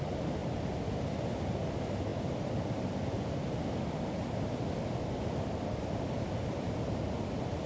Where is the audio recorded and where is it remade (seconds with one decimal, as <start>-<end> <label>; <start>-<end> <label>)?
0.0-0.4 recorded; 0.4-1.1 remade; 1.1-2.1 recorded; 2.1-6.7 remade; 6.7-7.7 recorded